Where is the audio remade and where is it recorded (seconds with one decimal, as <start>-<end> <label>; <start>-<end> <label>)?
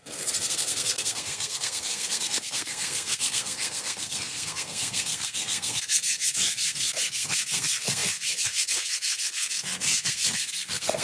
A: 0.0-11.0 remade